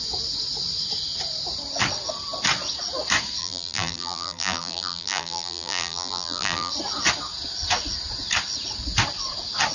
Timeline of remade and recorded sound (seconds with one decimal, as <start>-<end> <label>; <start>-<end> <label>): 0.0-3.4 recorded; 3.4-6.7 remade; 6.7-9.7 recorded